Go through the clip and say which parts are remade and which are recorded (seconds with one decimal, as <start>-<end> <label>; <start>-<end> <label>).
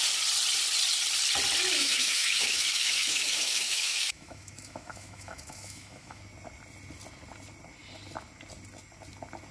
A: 0.0-1.8 recorded; 1.8-6.2 remade; 6.2-9.5 recorded